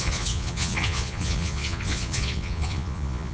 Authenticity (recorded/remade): remade